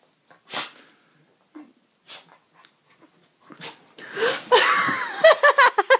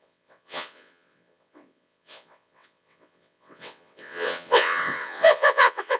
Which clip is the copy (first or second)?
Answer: second